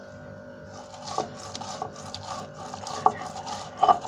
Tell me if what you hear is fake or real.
fake